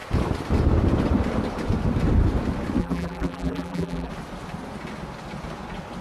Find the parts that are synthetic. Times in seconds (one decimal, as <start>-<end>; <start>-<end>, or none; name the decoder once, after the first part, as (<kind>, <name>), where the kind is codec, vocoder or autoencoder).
2.8-4.1 (vocoder, BigVGAN v2)